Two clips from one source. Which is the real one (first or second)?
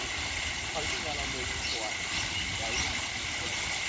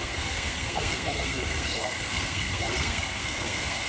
first